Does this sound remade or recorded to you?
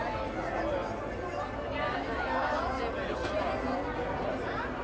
recorded